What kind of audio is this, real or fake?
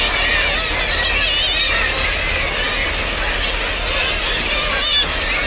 real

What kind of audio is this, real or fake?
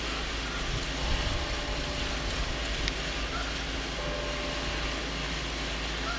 real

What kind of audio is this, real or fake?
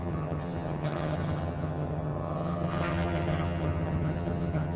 fake